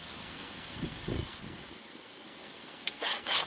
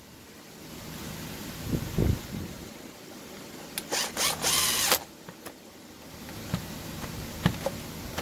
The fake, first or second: first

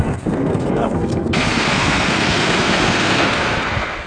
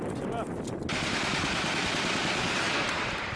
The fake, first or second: first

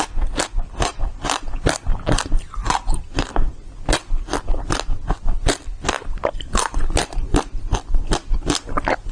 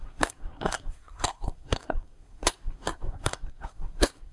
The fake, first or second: second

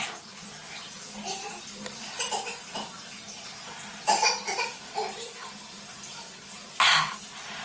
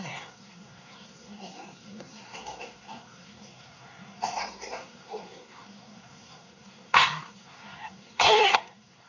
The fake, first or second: second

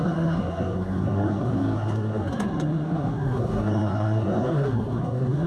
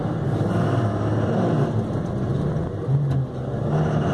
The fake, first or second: first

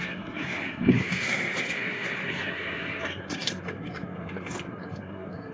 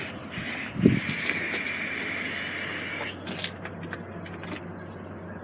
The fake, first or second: first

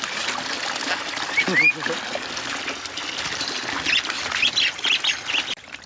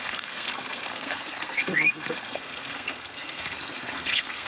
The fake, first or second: second